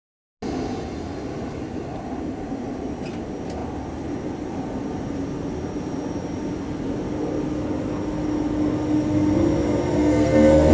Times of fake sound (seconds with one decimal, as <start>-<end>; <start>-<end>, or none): 10.0-10.7